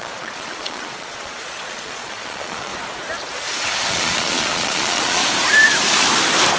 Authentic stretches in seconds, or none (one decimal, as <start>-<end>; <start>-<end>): 2.7-3.9; 5.2-6.6